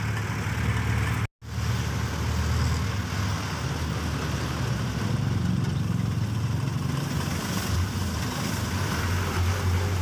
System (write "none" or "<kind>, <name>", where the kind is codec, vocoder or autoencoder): none